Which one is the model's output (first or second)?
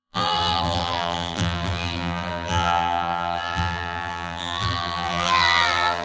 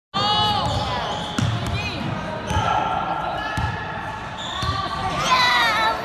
first